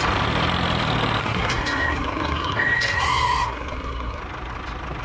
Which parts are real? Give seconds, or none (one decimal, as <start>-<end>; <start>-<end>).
0.0-1.2; 4.2-5.0